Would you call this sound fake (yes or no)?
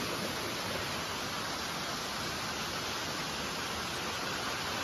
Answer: no